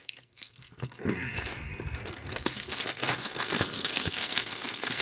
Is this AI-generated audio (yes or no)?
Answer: yes